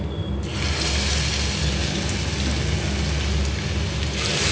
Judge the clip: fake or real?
real